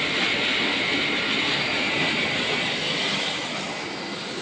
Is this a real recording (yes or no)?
yes